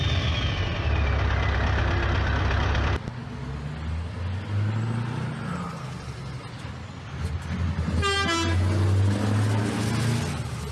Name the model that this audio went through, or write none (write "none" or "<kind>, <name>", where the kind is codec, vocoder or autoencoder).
none